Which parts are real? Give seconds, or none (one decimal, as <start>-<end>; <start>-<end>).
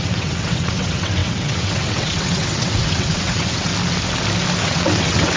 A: 3.7-4.6